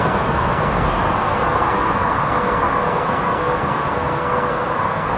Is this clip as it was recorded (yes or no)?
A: no